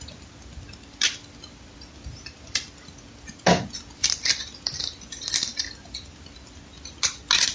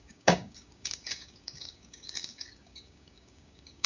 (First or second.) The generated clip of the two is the second